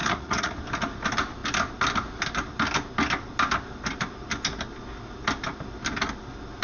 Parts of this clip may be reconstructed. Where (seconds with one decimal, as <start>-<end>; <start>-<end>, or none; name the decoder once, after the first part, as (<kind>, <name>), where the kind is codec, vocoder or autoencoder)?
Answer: 0.0-0.5 (vocoder, Vocos)